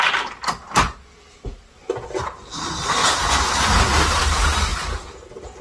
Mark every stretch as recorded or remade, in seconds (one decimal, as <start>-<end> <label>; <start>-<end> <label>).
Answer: 0.0-3.0 recorded; 3.0-3.7 remade; 3.7-4.7 recorded; 4.7-5.6 remade